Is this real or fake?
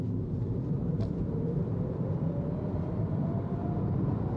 fake